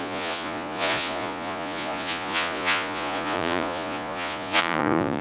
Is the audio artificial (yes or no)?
yes